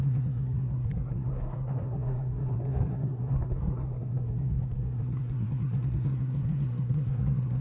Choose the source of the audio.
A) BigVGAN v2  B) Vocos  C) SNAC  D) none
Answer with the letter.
C